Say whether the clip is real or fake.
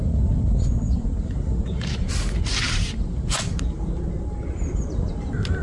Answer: real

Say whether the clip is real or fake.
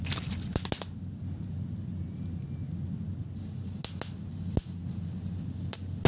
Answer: real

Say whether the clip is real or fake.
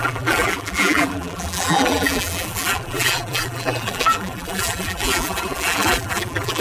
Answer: fake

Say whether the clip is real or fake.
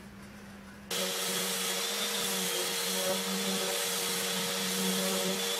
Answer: real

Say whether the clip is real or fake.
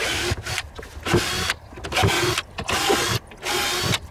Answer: real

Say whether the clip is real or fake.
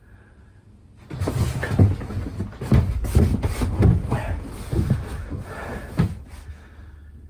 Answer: real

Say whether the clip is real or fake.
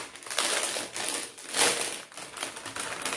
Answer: real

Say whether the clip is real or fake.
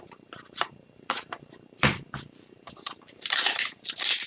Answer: fake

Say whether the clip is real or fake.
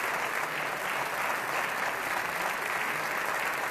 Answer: real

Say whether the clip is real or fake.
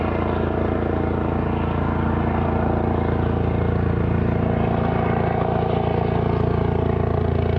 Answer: real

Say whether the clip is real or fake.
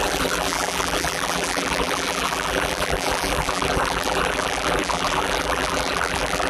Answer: fake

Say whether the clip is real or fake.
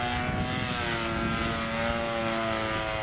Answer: real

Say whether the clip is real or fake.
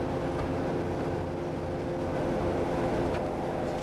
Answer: real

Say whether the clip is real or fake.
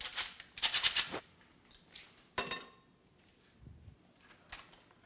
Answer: real